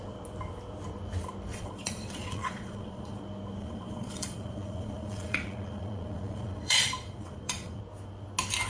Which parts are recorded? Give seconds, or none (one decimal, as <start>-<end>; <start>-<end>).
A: 0.0-1.5; 3.2-3.6; 7.8-8.7